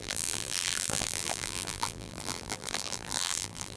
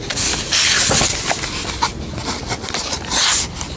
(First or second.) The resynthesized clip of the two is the first